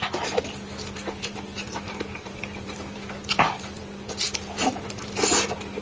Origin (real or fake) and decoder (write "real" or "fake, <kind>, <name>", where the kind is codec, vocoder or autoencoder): real